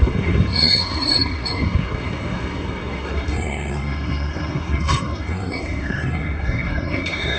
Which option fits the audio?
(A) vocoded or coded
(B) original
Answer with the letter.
A